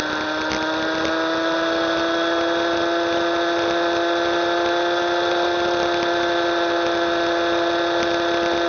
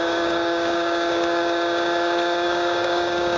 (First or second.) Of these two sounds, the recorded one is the first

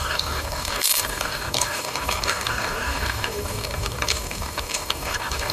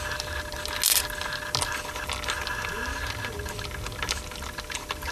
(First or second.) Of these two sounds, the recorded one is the second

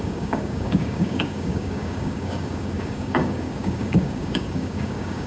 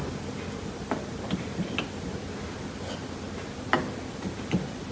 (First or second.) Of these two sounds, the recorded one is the second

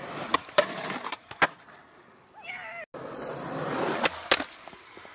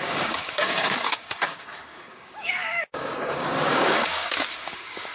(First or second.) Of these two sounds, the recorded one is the first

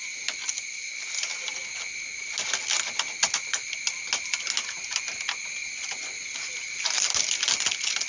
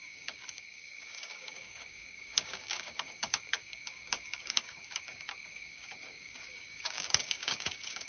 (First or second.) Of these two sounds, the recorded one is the first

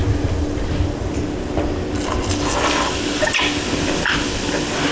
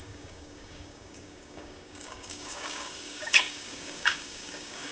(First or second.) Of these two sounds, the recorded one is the first